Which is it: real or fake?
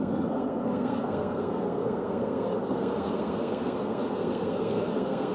fake